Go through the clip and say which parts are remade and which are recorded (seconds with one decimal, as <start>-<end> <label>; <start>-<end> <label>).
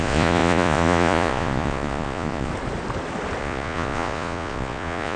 0.0-2.5 remade; 2.5-3.4 recorded; 3.4-5.2 remade